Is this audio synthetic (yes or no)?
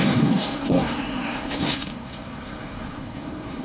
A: yes